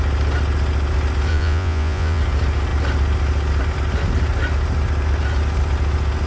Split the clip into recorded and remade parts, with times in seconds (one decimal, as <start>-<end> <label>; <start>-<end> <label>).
0.0-1.3 recorded; 1.3-2.2 remade; 2.2-6.3 recorded

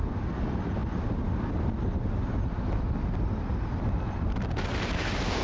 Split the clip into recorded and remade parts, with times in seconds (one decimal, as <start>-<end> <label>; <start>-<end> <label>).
0.0-5.4 recorded

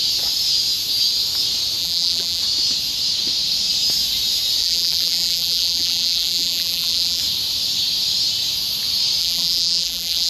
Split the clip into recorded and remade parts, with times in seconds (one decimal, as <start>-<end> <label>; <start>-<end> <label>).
0.0-1.8 recorded; 1.8-2.4 remade; 2.4-4.6 recorded; 4.6-7.2 remade; 7.2-9.2 recorded; 9.2-10.3 remade

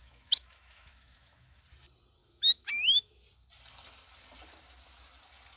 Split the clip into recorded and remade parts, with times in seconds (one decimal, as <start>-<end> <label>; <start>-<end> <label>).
0.0-1.6 remade; 1.6-2.2 recorded; 2.2-3.1 remade; 3.1-5.6 recorded

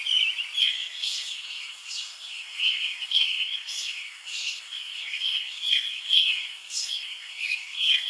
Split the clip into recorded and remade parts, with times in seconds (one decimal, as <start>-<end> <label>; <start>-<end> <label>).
0.0-0.6 recorded; 0.6-8.1 remade

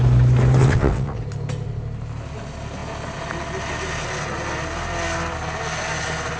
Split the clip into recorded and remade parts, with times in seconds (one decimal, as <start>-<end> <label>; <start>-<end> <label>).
0.0-0.6 recorded; 0.6-1.2 remade; 1.2-6.4 recorded

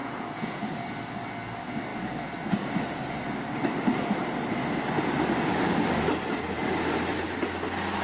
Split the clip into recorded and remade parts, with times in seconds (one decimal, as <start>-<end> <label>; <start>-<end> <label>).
0.0-0.6 remade; 0.6-8.0 recorded

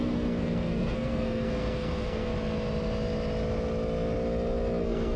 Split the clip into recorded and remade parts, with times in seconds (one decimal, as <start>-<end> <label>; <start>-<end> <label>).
0.0-2.3 remade; 2.3-4.8 recorded; 4.8-5.2 remade